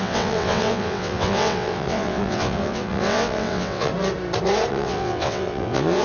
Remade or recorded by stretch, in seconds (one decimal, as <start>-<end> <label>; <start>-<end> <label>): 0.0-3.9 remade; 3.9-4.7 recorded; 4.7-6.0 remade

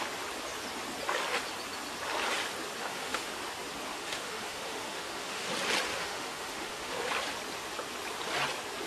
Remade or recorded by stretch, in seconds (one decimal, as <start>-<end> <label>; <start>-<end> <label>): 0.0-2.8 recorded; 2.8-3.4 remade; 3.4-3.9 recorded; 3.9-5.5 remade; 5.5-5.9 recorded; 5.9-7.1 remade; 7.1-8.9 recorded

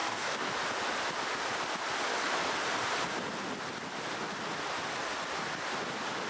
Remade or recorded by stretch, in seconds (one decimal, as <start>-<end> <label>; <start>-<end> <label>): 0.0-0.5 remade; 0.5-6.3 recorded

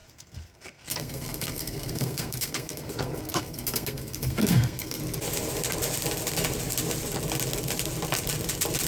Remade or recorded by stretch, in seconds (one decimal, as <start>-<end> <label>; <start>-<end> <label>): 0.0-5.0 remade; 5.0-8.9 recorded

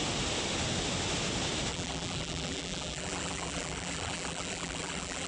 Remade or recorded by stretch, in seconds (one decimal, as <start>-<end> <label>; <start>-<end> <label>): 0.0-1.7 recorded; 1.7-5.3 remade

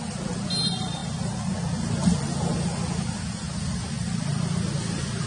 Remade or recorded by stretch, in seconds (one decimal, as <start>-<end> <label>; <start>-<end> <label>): 0.0-5.3 recorded

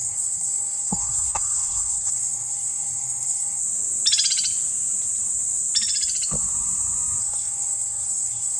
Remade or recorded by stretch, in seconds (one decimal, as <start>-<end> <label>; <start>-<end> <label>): 0.0-3.6 remade; 3.6-7.2 recorded; 7.2-8.6 remade